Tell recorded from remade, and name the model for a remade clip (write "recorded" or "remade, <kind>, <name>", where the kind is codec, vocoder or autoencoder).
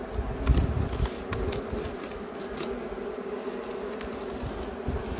recorded